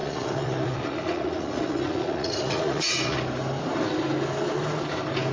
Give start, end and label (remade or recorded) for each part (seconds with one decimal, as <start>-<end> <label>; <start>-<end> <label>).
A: 0.0-3.2 remade; 3.2-5.3 recorded